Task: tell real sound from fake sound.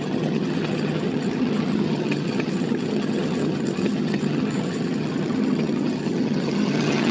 fake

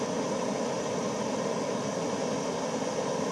real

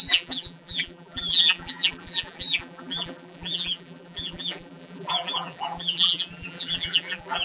fake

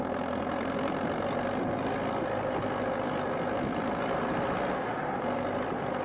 real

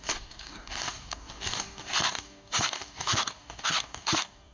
fake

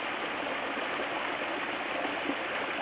real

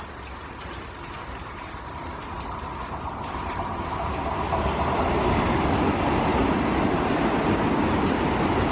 real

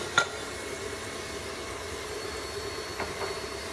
real